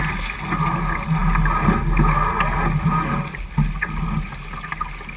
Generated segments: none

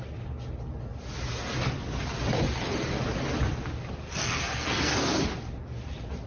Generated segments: 4.2-5.1 (codec, SNAC)

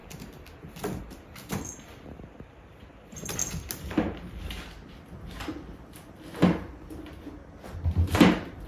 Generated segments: 1.0-3.4 (vocoder, BigVGAN v2); 8.1-8.7

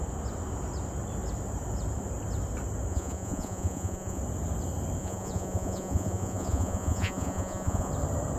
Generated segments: 2.9-4.2 (vocoder, Vocos); 5.0-7.9